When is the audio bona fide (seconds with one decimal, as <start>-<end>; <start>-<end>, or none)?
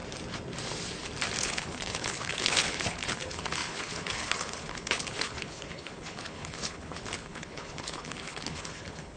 0.0-1.4